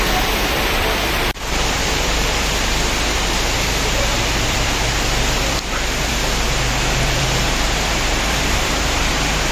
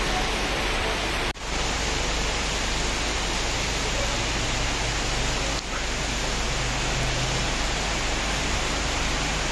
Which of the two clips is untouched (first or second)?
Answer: second